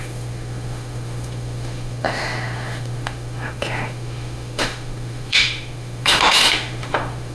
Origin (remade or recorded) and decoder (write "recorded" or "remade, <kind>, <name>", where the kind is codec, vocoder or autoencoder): remade, autoencoder, DAC-VAE